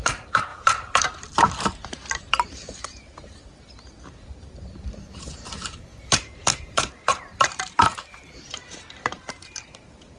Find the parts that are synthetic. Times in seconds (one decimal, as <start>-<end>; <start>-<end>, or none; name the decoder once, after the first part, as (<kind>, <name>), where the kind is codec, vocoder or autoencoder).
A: 0.0-10.2 (vocoder, BigVGAN v2)